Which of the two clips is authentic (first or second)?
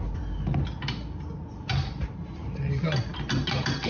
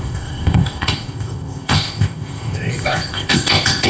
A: first